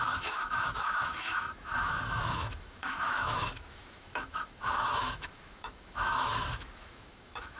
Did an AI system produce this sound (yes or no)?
yes